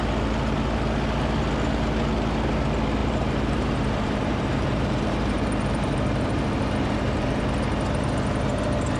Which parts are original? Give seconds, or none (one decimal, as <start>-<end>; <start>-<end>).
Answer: 0.0-3.0; 7.4-9.0